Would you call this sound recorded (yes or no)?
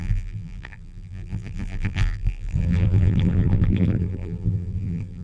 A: no